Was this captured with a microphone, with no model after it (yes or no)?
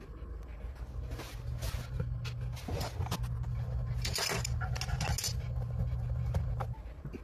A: yes